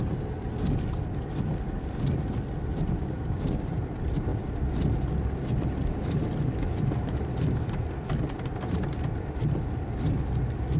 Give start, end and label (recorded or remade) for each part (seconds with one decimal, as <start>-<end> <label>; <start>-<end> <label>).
0.0-3.0 recorded; 3.0-3.6 remade; 3.6-10.8 recorded